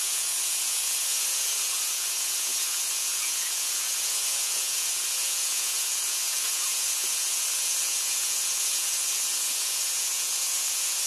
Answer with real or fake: fake